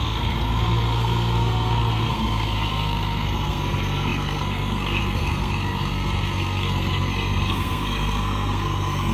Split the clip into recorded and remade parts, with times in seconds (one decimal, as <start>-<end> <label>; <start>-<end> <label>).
0.0-9.1 remade